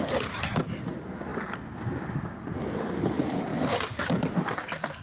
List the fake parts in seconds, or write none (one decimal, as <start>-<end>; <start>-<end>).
none